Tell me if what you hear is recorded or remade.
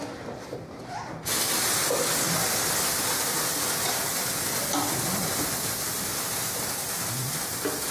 recorded